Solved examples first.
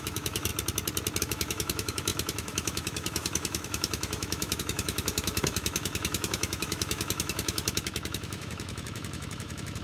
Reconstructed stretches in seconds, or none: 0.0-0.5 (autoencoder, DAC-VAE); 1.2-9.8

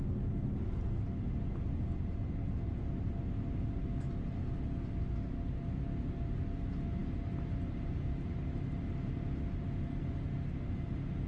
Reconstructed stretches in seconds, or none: none

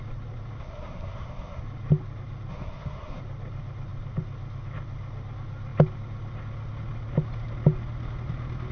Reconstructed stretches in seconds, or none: 0.6-1.6 (codec, SNAC); 2.5-3.2